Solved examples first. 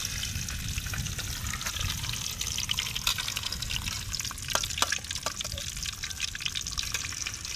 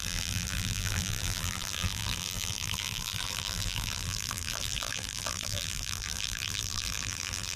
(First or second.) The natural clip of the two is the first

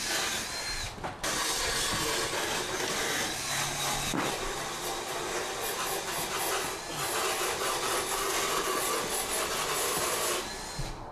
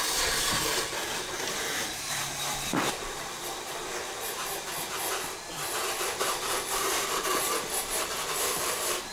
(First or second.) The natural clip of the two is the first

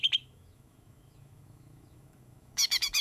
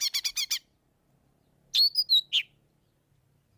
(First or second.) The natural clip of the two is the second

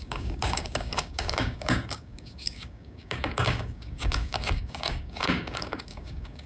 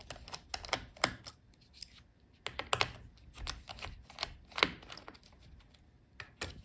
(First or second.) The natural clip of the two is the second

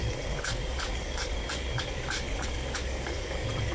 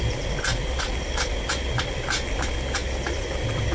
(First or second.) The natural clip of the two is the second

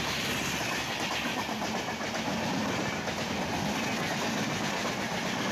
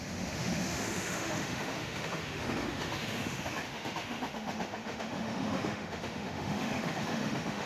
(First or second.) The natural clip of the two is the first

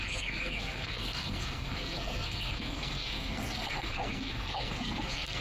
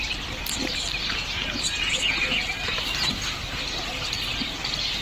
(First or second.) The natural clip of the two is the second